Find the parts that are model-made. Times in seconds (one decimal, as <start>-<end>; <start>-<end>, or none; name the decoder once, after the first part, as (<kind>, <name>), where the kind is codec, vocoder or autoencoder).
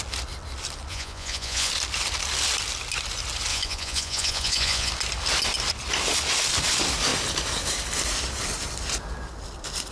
0.9-1.7 (vocoder, Vocos); 3.5-4.9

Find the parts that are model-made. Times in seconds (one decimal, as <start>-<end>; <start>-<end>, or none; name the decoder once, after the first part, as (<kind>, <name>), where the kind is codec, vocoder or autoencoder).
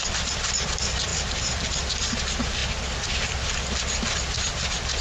1.1-2.2 (vocoder, BigVGAN v2)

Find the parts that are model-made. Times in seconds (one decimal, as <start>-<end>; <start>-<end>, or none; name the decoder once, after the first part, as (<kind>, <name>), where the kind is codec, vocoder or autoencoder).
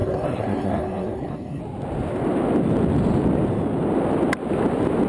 0.0-1.6 (codec, SNAC)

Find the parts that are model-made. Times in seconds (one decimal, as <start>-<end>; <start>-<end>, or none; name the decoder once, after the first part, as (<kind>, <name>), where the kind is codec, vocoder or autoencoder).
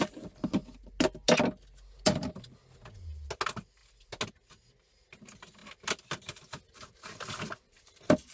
none